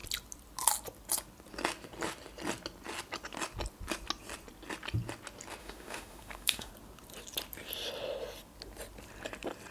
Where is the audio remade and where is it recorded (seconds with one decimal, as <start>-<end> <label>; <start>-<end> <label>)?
0.0-5.6 recorded; 5.6-6.7 remade; 6.7-9.7 recorded